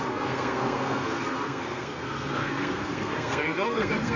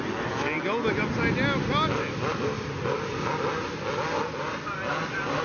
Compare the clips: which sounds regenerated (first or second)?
first